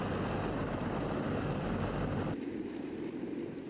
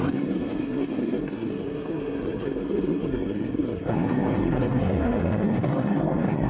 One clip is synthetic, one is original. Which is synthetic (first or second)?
second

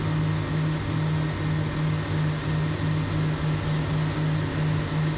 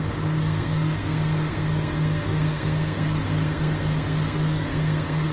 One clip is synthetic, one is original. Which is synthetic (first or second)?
second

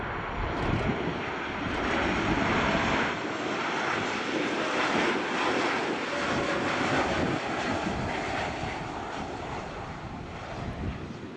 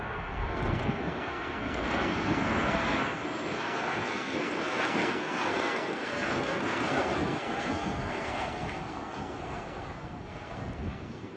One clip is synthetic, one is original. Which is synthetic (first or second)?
second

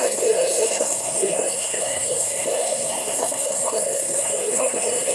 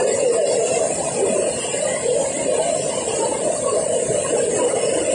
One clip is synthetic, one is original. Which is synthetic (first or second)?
first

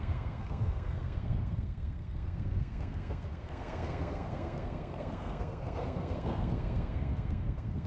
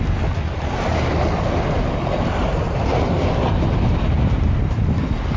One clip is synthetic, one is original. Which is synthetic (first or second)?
first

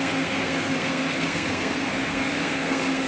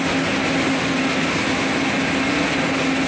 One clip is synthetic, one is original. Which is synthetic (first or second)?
first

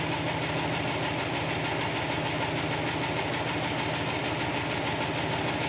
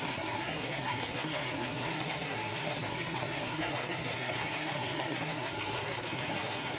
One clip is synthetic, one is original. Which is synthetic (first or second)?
second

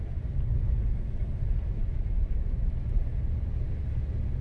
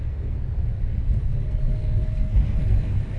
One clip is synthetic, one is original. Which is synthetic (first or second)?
second